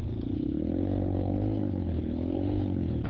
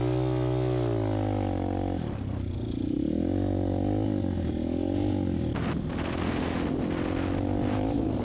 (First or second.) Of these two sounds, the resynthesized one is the first